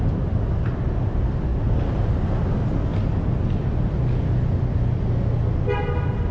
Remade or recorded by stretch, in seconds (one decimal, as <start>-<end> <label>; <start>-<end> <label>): 0.0-6.3 recorded